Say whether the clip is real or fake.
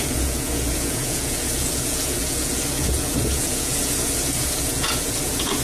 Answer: fake